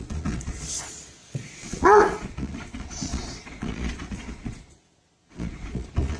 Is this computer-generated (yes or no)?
yes